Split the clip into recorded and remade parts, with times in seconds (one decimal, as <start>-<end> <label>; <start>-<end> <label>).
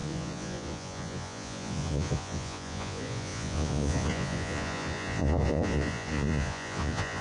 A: 0.0-7.2 remade